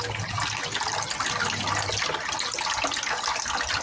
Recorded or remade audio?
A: recorded